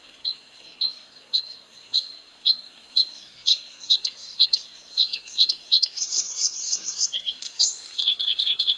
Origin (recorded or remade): remade